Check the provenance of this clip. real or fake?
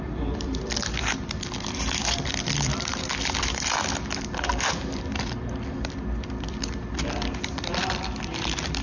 fake